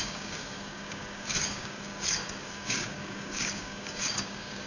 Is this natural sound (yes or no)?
no